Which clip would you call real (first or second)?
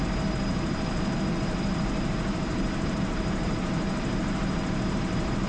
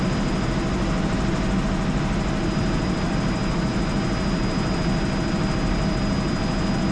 second